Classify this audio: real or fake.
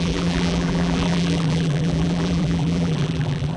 fake